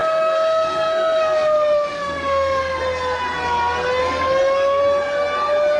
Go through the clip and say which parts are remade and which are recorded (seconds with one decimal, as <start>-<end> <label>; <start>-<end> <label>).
0.0-2.8 remade; 2.8-4.0 recorded; 4.0-4.8 remade; 4.8-5.8 recorded

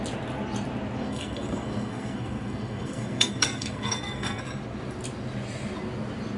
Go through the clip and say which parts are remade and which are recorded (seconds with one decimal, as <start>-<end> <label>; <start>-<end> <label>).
0.0-1.0 recorded; 1.0-4.4 remade; 4.4-6.4 recorded

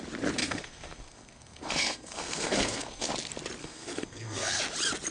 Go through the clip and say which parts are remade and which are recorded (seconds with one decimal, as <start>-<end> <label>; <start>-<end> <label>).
0.0-0.4 recorded; 0.4-3.1 remade; 3.1-3.6 recorded; 3.6-4.6 remade; 4.6-5.1 recorded

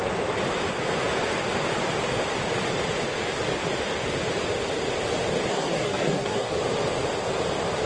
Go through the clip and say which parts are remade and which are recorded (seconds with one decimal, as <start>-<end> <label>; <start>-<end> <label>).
0.0-5.5 recorded; 5.5-6.5 remade; 6.5-7.9 recorded

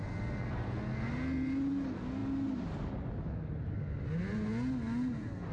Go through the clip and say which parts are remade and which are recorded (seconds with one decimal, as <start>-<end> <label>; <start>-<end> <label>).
0.0-5.5 recorded

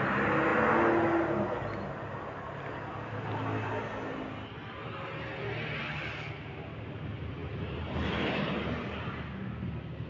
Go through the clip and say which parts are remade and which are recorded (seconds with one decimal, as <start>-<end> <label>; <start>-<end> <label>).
0.0-10.1 recorded

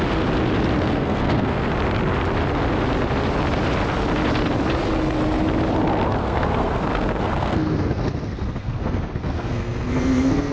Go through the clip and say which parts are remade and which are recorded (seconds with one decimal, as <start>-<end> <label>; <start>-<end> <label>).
0.0-0.9 recorded; 0.9-1.7 remade; 1.7-6.2 recorded; 6.2-10.5 remade

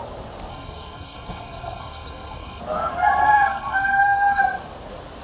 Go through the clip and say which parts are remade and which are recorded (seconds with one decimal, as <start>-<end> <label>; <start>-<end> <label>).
0.0-0.5 recorded; 0.5-2.6 remade; 2.6-3.2 recorded; 3.2-4.4 remade; 4.4-5.2 recorded